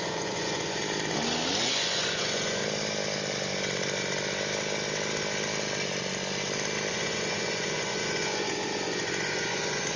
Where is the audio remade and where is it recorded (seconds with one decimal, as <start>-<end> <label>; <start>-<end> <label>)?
0.0-0.8 remade; 0.8-1.6 recorded; 1.6-2.6 remade; 2.6-6.9 recorded; 6.9-10.0 remade